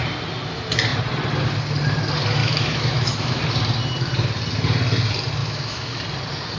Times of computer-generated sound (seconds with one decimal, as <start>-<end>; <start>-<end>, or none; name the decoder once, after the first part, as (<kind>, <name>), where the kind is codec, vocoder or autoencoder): 2.4-3.4 (autoencoder, DAC-VAE); 5.4-6.0